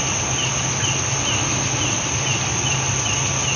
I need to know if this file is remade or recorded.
recorded